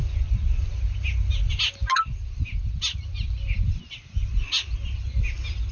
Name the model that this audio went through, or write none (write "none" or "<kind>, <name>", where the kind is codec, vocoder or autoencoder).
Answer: none